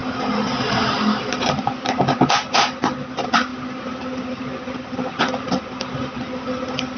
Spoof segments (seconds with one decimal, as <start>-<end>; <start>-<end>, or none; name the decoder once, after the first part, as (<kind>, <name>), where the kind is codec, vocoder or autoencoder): none